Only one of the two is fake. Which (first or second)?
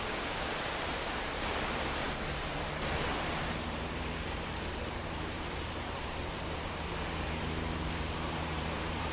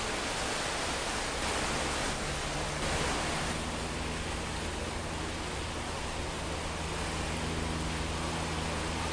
first